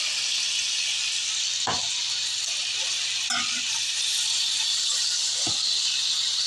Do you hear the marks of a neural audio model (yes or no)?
no